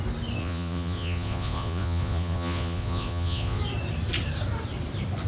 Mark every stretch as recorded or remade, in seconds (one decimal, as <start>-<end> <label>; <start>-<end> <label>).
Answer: 0.0-0.4 recorded; 0.4-3.6 remade; 3.6-5.3 recorded

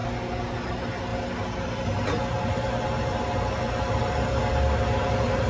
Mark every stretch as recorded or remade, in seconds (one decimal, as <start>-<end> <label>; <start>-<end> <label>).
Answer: 0.0-5.5 recorded

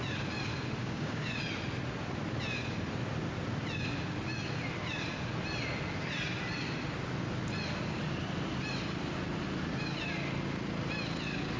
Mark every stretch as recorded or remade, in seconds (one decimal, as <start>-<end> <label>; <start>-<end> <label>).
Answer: 0.0-0.8 recorded; 0.8-1.3 remade; 1.3-11.6 recorded

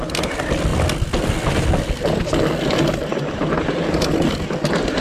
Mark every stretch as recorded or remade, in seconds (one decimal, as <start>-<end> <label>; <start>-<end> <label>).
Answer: 0.0-5.0 recorded

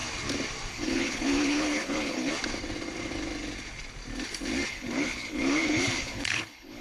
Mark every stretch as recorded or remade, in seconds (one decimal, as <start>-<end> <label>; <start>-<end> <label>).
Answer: 0.0-0.7 recorded; 0.7-2.3 remade; 2.3-4.7 recorded; 4.7-6.8 remade

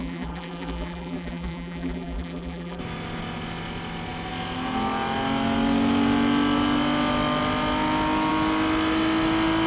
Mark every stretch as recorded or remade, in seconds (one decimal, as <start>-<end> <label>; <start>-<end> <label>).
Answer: 0.0-2.8 remade; 2.8-9.7 recorded